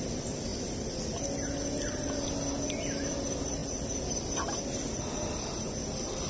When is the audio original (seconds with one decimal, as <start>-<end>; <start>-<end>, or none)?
0.0-6.3